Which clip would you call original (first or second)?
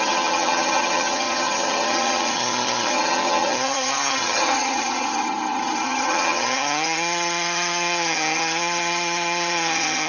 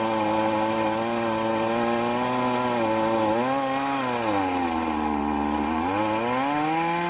second